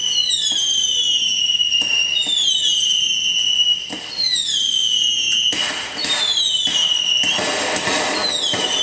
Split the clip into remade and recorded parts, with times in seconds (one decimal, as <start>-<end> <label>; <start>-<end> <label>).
0.0-4.8 recorded; 4.8-5.5 remade; 5.5-8.8 recorded